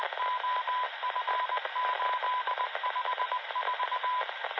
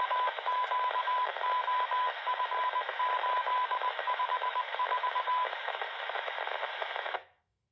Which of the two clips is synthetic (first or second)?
second